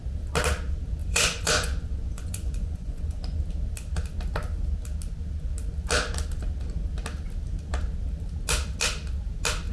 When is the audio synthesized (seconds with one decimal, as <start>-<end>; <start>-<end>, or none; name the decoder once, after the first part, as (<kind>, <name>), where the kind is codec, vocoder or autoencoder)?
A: 1.0-3.4 (vocoder, Vocos)